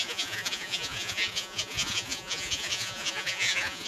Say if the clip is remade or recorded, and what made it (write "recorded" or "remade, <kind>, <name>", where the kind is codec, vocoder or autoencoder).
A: remade, vocoder, Vocos